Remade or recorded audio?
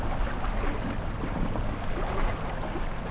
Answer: recorded